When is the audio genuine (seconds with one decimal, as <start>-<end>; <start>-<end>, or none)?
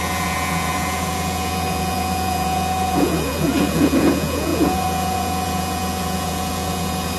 none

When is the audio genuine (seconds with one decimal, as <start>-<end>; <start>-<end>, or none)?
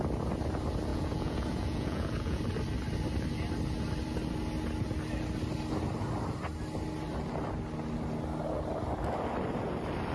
0.0-0.9; 2.4-10.1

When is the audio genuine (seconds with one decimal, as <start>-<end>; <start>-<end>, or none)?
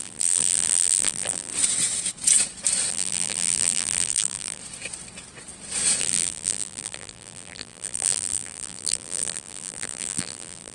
1.5-2.9; 4.6-6.0